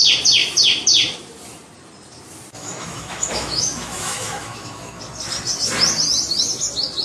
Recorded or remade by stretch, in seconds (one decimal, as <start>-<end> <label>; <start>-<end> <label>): 0.0-2.6 recorded; 2.6-5.0 remade; 5.0-7.0 recorded